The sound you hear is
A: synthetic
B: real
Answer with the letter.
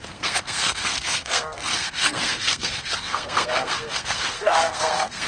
A